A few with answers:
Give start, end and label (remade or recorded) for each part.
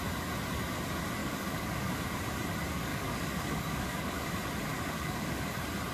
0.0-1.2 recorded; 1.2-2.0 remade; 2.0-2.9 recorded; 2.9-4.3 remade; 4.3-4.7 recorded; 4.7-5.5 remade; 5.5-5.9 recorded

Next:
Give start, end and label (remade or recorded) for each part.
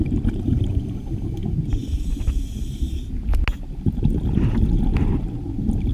0.0-5.9 recorded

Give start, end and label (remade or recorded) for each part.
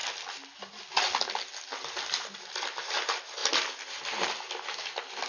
0.0-5.3 recorded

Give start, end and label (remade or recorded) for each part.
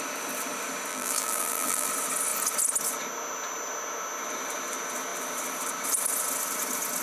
0.0-0.9 recorded; 0.9-1.9 remade; 1.9-7.0 recorded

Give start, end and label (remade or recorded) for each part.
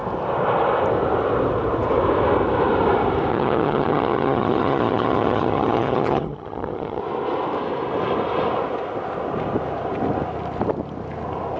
0.0-3.3 recorded; 3.3-7.0 remade; 7.0-11.6 recorded